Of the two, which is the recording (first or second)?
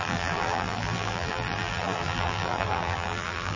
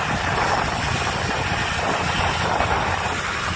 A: second